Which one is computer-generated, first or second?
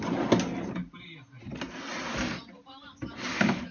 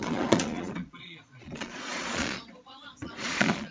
second